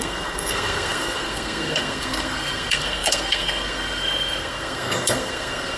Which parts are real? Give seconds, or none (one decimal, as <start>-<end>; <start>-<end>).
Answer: none

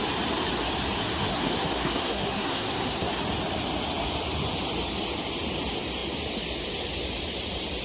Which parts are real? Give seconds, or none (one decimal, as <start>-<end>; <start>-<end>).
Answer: 0.0-1.3; 3.1-7.8